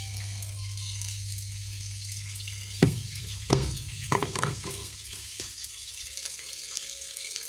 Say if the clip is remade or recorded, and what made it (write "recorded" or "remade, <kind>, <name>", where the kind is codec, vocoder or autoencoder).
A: remade, codec, SNAC